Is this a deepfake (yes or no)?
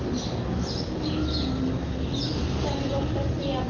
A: no